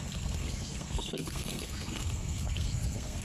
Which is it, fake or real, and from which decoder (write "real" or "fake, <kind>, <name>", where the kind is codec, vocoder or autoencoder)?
fake, codec, SNAC